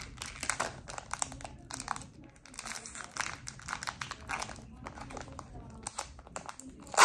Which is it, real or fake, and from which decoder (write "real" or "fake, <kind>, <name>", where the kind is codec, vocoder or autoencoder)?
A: real